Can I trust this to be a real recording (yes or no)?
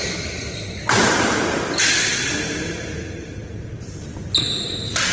yes